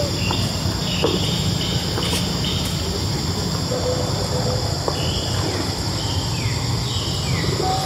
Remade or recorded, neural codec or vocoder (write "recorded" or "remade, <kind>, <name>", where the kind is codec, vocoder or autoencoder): recorded